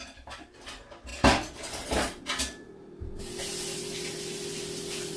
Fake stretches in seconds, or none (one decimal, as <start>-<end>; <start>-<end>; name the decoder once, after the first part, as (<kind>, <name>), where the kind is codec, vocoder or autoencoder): none

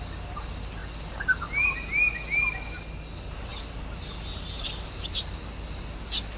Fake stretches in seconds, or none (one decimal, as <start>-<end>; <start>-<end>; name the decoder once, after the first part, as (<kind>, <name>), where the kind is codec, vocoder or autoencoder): none